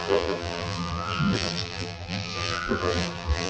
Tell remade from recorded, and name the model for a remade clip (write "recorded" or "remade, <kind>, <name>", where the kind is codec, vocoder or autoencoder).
remade, vocoder, BigVGAN v2